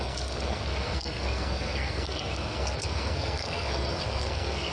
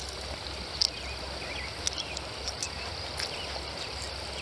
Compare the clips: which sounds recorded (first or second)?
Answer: second